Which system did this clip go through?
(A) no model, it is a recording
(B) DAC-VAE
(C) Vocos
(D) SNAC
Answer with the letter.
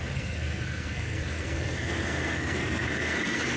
D